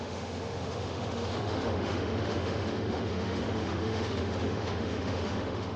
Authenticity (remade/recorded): remade